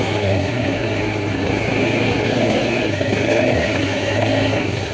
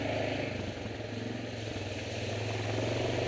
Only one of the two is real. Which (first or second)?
second